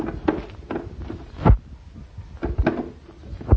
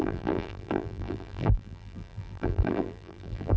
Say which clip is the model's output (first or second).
second